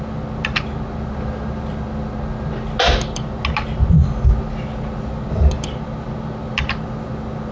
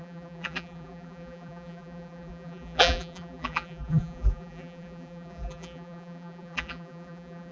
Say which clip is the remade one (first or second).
second